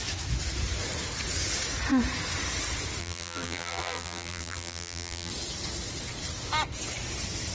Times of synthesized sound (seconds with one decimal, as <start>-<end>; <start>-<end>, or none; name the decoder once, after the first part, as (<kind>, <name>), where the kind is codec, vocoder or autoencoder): 3.0-5.3 (vocoder, BigVGAN v2)